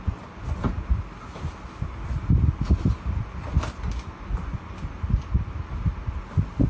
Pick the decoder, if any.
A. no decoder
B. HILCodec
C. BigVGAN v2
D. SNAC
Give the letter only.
A